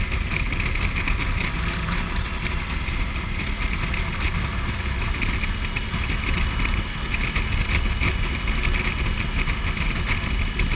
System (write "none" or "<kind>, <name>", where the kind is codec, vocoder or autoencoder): none